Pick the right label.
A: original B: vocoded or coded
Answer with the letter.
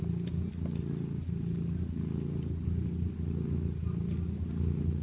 A